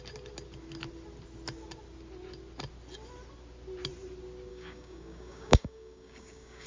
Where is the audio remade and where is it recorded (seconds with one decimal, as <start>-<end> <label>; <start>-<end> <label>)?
0.0-4.5 recorded; 4.5-6.7 remade